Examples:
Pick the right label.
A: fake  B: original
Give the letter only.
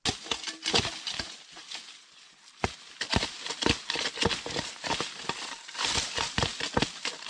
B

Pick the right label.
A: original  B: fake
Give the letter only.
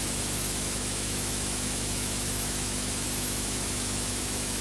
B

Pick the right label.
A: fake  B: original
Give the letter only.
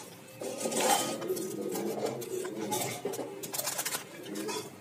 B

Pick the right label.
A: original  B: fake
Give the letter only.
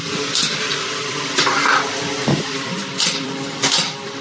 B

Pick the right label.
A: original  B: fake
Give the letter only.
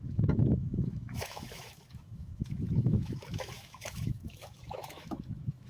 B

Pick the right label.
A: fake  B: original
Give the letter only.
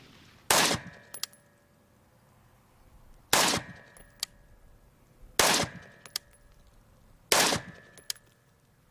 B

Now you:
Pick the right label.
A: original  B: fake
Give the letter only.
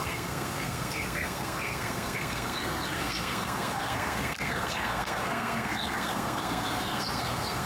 B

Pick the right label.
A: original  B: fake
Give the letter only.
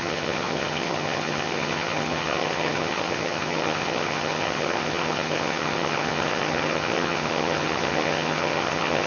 B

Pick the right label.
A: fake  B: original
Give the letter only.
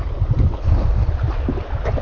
B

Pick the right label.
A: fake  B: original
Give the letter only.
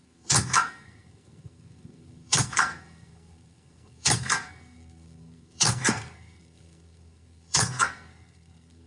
A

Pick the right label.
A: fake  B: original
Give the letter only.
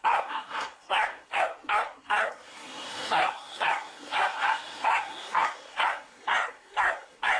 A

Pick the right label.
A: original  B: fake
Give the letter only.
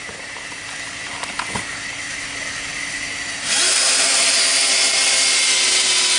A